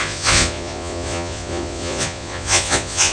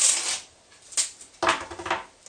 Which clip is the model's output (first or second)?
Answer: first